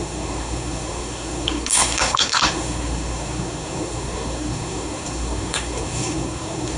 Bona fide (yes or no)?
no